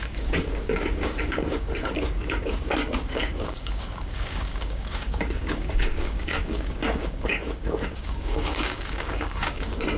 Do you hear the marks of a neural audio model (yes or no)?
yes